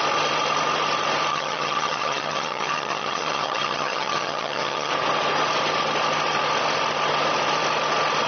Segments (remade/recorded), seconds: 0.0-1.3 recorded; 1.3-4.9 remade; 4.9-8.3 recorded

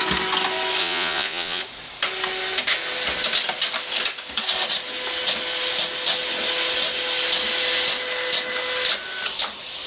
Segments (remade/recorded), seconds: 0.0-0.8 recorded; 0.8-1.6 remade; 1.6-9.9 recorded

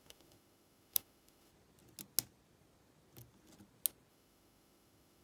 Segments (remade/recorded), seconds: 0.0-1.5 remade; 1.5-4.1 recorded; 4.1-5.2 remade